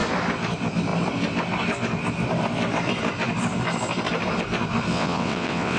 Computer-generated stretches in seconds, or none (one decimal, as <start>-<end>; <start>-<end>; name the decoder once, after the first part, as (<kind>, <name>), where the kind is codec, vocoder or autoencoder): 4.9-5.8 (vocoder, WaveNeXt)